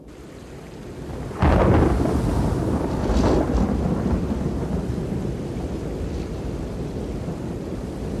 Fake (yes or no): no